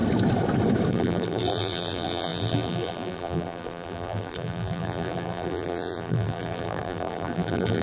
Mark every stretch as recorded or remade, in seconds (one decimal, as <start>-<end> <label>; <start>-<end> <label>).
0.0-0.9 recorded; 0.9-7.8 remade